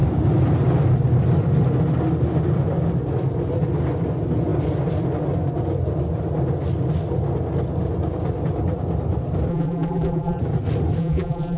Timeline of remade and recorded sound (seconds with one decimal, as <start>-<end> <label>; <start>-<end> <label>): 0.0-9.5 recorded; 9.5-10.4 remade; 10.4-11.0 recorded; 11.0-11.6 remade